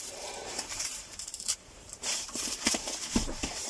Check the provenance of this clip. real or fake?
fake